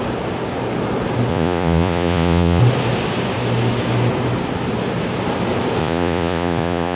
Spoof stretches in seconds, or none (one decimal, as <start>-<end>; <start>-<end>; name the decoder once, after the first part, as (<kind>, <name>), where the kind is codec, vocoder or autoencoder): 1.3-2.6 (vocoder, Vocos); 5.8-7.0